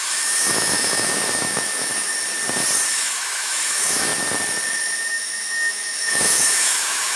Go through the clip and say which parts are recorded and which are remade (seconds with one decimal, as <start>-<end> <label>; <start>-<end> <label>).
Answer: 0.0-2.1 remade; 2.1-2.9 recorded; 2.9-4.1 remade; 4.1-4.7 recorded; 4.7-7.2 remade